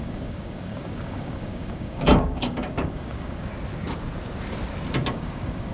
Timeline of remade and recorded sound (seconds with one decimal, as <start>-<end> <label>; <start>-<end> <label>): 0.0-3.5 remade; 3.5-5.1 recorded; 5.1-5.7 remade